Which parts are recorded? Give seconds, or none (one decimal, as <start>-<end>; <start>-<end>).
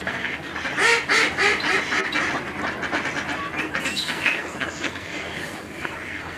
0.5-3.6